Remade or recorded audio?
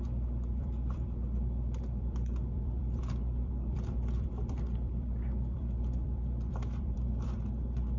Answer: remade